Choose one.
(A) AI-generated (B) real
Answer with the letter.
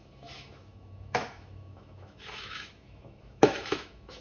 A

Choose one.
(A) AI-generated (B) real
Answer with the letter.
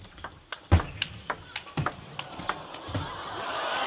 B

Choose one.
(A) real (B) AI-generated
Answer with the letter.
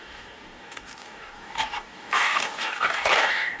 B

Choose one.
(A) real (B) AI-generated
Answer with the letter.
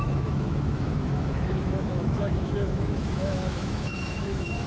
B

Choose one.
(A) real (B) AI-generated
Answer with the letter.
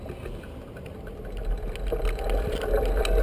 A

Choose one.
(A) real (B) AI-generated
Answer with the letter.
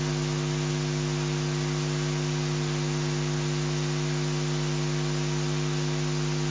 A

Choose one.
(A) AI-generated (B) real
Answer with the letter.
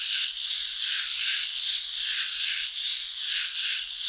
B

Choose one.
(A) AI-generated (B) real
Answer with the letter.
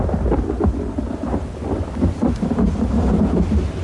B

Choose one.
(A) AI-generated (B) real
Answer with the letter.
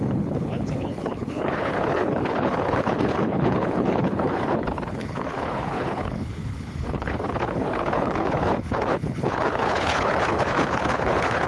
A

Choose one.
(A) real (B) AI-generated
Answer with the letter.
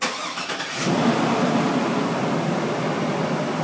A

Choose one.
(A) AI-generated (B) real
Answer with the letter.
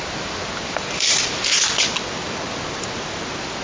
B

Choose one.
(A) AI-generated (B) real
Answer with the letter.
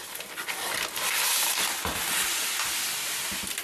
B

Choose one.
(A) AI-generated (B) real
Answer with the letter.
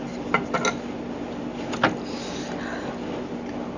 B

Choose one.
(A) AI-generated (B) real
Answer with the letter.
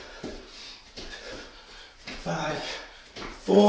A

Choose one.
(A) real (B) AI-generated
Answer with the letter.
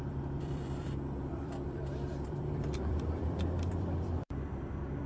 B